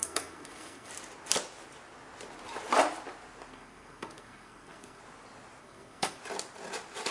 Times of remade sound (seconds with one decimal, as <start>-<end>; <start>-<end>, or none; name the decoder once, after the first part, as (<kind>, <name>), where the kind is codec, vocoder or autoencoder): 0.0-0.9 (codec, SNAC); 3.5-5.0; 5.6-6.2